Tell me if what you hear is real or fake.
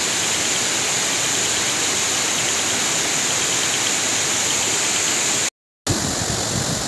real